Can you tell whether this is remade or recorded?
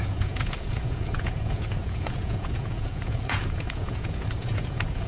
remade